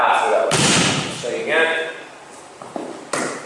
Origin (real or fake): real